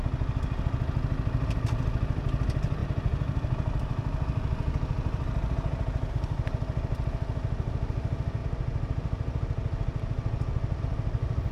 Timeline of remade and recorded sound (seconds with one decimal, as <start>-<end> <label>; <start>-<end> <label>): 0.0-11.5 recorded